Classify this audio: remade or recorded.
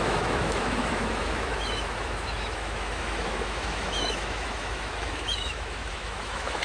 remade